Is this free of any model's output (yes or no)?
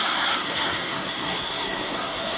no